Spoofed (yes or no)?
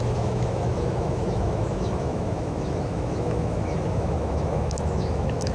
yes